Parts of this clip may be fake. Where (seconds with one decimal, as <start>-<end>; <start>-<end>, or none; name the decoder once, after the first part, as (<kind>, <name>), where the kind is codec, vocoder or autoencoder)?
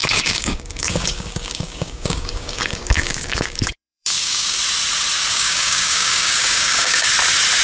0.0-4.6 (codec, DAC); 5.3-7.1